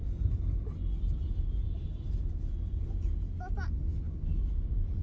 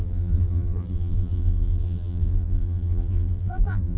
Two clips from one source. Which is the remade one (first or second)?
second